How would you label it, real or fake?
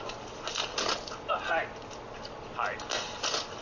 real